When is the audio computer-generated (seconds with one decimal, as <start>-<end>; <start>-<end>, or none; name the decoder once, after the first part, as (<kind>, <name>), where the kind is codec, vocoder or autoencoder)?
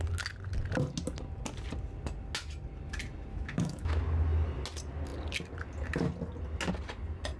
3.3-4.0 (autoencoder, DAC-VAE)